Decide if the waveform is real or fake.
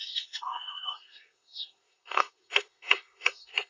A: fake